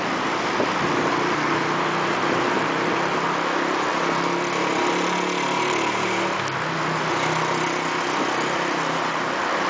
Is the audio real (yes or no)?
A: yes